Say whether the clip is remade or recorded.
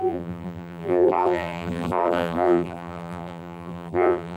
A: remade